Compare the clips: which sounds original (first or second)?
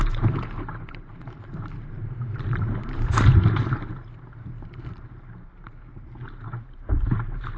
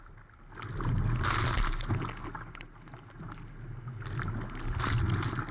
second